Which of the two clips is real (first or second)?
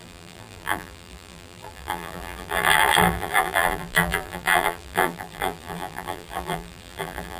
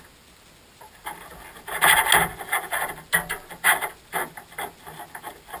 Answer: second